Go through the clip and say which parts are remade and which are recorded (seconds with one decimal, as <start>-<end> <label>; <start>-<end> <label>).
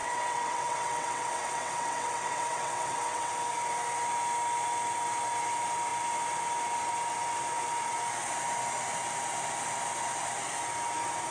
0.0-3.3 remade; 3.3-11.3 recorded